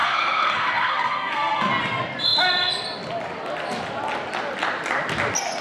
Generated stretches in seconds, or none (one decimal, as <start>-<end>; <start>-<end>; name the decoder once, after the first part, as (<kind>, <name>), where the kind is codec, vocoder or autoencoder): 0.0-1.7 (codec, SNAC)